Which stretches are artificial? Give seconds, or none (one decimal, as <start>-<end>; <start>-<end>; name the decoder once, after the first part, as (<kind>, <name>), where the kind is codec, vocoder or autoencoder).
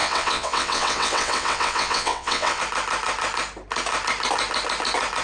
0.0-2.6 (vocoder, WaveNeXt)